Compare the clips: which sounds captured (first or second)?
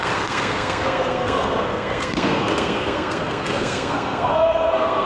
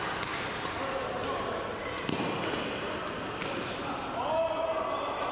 second